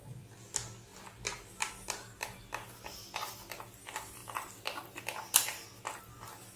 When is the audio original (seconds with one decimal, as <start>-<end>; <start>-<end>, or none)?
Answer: 0.0-6.6